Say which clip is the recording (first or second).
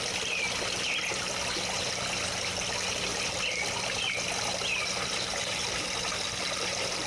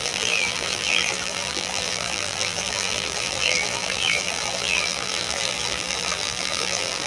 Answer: first